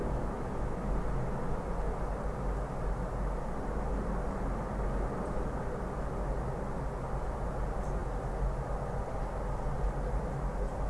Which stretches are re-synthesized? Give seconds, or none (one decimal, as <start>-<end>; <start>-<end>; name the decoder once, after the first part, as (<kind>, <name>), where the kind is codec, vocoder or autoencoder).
0.0-0.9 (autoencoder, DAC-VAE)